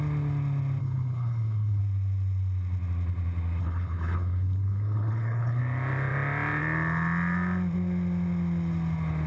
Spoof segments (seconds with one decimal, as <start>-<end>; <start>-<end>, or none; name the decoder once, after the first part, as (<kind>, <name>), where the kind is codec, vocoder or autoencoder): 0.8-1.8 (codec, HILCodec); 3.6-5.6